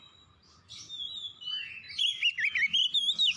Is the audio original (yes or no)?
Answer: yes